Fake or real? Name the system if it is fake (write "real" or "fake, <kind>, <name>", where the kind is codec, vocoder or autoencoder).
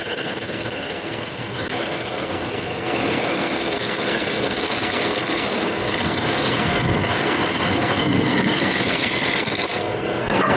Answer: fake, codec, SNAC